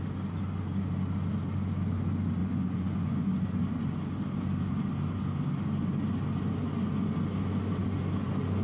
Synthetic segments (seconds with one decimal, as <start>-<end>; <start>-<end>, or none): 2.4-3.3